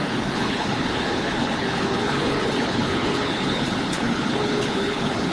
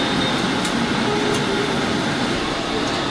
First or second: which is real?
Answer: second